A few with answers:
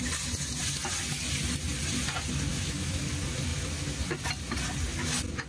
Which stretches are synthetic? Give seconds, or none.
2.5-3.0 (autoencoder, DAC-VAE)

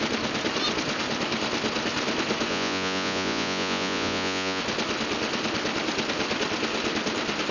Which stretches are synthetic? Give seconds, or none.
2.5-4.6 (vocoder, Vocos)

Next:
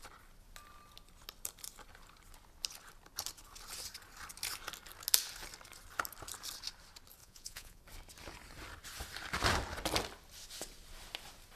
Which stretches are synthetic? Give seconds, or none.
7.2-7.8 (vocoder, Vocos)

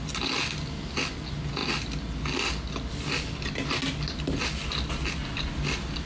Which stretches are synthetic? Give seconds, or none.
none

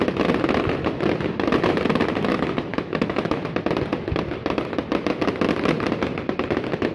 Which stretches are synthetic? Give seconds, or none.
2.7-3.4 (autoencoder, DAC-VAE)

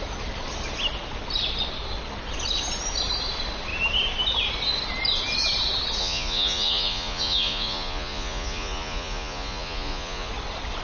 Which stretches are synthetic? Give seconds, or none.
6.0-10.3 (vocoder, Vocos)